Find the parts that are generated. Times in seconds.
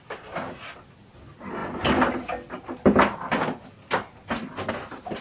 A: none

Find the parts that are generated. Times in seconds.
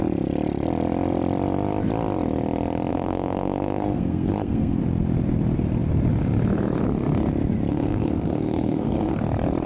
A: 2.9-4.8 (codec, SNAC); 7.7-9.2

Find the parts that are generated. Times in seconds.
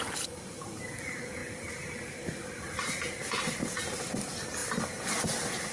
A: none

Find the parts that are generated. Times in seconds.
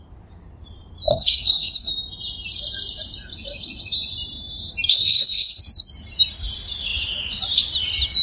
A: 1.1-1.9 (codec, SNAC); 4.9-5.6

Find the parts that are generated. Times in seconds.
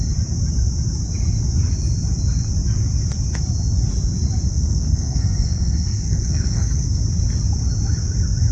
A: 4.5-7.0 (codec, SNAC)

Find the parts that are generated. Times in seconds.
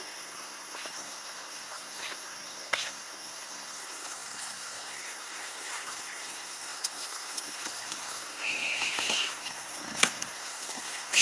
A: 0.0-11.2 (codec, SNAC)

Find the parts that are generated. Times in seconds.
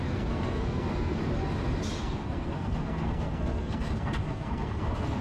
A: 0.0-1.2 (codec, SNAC); 2.0-5.2